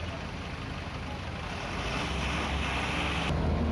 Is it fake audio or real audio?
real